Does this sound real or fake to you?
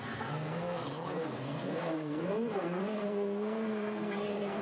fake